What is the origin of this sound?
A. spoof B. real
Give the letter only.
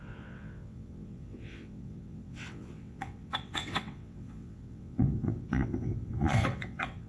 A